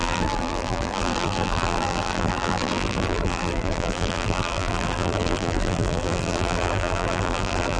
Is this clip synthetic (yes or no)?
yes